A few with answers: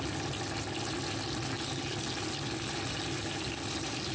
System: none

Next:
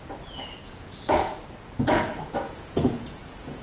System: vocoder, Vocos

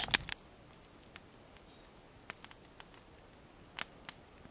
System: none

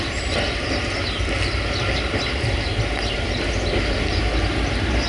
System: none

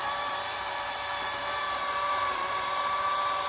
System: none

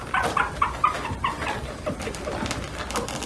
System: none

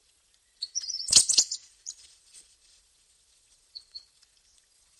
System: vocoder, Vocos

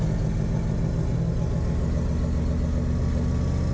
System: none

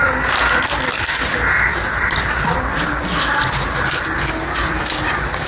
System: none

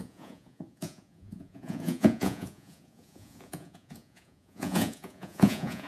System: vocoder, Vocos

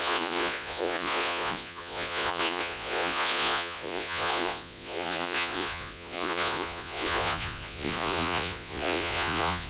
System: vocoder, Vocos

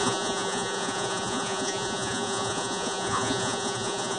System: vocoder, Vocos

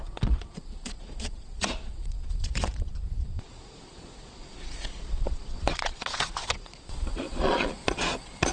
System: vocoder, Vocos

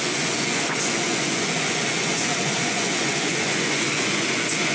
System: vocoder, Vocos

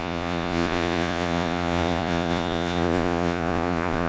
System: vocoder, Vocos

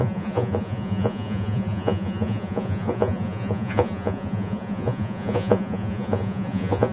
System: vocoder, Vocos